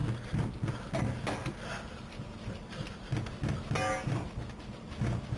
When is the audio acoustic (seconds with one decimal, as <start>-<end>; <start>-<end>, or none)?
0.0-5.4